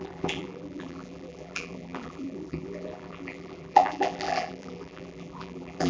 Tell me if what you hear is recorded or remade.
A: remade